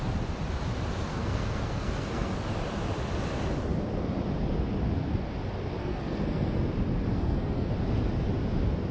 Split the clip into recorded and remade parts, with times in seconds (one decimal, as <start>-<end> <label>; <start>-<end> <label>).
0.0-1.1 recorded; 1.1-2.4 remade; 2.4-5.8 recorded; 5.8-6.6 remade; 6.6-7.1 recorded; 7.1-7.7 remade; 7.7-8.9 recorded